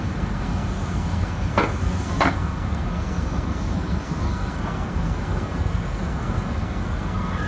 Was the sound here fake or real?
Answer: fake